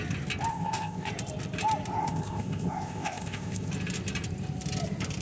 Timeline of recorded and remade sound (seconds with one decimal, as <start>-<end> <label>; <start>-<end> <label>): 0.0-0.5 recorded; 0.5-1.1 remade; 1.1-2.0 recorded; 2.0-3.7 remade; 3.7-5.2 recorded